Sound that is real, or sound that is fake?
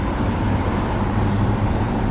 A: fake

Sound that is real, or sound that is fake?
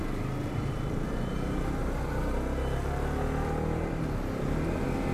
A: real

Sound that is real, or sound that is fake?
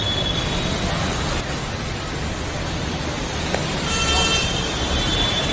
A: real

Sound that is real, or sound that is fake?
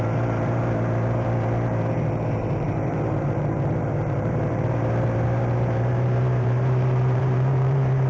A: fake